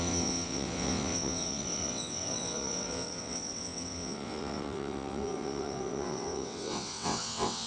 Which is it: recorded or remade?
remade